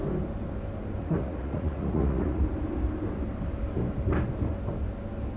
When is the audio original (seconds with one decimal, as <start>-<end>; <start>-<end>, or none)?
0.0-1.0; 2.4-5.4